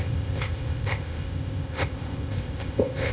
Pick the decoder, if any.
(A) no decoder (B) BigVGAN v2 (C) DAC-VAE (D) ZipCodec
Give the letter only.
D